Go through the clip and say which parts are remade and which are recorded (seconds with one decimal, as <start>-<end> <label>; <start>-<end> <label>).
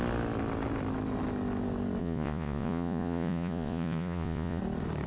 0.0-2.0 recorded; 2.0-4.6 remade; 4.6-5.1 recorded